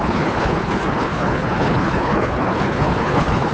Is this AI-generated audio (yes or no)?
yes